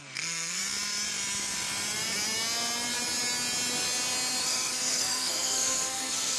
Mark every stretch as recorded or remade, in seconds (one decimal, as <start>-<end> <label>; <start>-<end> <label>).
0.0-0.6 remade; 0.6-4.4 recorded; 4.4-6.4 remade